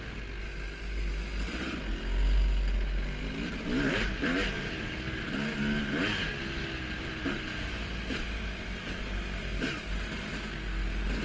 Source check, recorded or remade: recorded